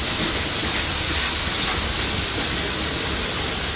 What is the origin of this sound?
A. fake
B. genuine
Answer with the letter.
B